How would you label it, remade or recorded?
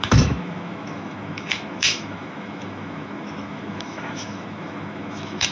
remade